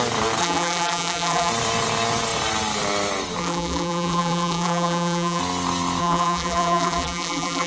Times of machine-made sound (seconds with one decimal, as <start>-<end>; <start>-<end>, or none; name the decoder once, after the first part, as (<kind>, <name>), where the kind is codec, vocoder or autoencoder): 0.4-1.5 (vocoder, BigVGAN v2); 3.4-5.4; 6.0-7.7